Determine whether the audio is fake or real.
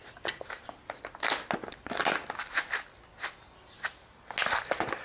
real